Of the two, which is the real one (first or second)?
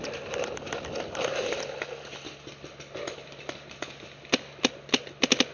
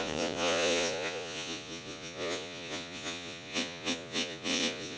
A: first